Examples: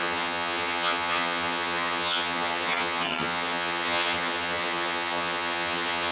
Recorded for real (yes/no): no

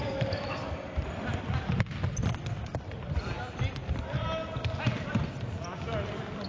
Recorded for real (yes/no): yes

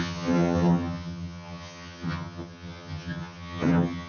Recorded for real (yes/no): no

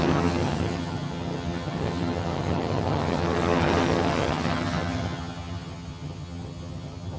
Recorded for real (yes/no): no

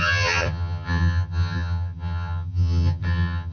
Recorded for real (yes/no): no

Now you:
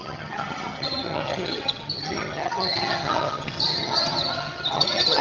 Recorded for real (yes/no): no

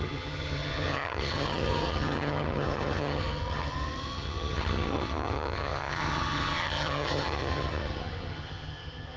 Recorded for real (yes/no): no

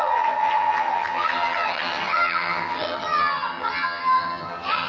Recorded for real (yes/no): no